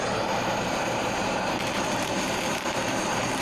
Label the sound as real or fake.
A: fake